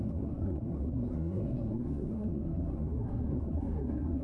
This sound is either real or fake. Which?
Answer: fake